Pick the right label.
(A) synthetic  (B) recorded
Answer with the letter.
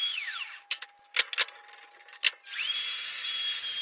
B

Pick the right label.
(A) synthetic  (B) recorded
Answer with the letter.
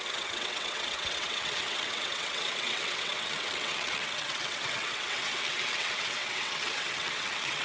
A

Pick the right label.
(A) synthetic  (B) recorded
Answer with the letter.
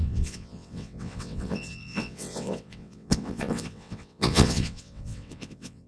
A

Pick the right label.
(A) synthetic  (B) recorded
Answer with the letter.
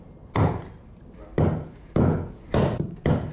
B